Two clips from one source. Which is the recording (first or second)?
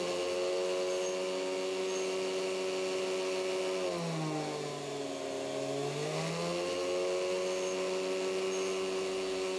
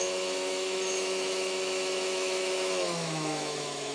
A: first